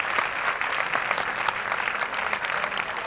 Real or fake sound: real